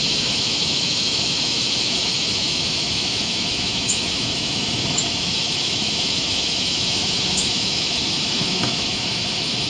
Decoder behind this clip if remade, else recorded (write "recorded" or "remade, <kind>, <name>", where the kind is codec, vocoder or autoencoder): remade, autoencoder, DAC-VAE